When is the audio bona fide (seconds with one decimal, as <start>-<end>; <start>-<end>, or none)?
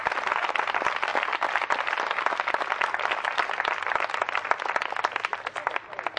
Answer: 0.0-6.2